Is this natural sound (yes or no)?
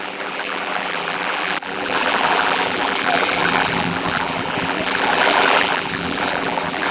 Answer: no